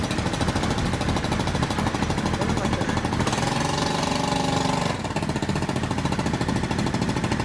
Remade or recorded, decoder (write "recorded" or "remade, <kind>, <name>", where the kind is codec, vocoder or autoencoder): recorded